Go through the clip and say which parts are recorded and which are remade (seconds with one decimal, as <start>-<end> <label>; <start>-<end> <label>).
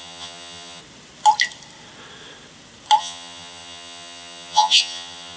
0.0-0.8 remade; 0.8-3.0 recorded; 3.0-5.4 remade